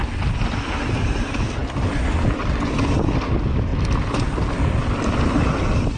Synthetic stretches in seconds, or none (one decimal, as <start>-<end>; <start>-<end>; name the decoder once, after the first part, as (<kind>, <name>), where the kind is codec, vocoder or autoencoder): none